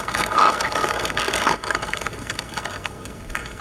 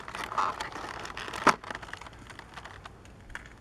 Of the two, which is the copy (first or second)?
first